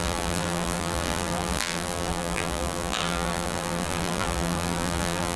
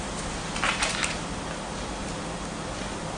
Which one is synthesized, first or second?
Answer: first